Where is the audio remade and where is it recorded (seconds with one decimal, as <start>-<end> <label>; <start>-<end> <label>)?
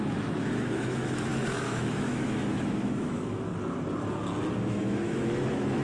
0.0-3.5 remade; 3.5-4.6 recorded; 4.6-5.8 remade